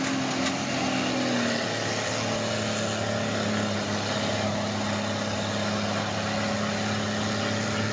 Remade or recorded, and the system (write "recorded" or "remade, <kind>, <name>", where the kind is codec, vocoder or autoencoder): recorded